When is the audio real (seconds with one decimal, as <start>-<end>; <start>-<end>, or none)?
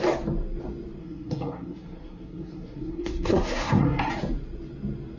0.0-1.0; 4.1-5.2